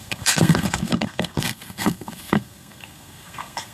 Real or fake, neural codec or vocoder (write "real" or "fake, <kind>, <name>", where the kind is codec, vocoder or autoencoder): fake, codec, SNAC